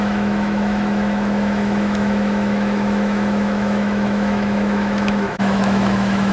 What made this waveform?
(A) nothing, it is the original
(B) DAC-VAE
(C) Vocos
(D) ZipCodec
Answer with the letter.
B